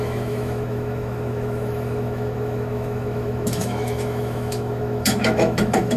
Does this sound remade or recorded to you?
remade